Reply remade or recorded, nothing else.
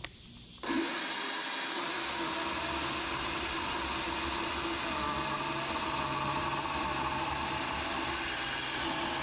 recorded